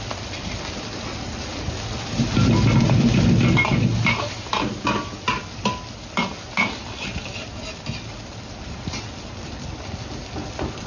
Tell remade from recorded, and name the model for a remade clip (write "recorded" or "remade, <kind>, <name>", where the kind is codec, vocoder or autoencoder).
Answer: recorded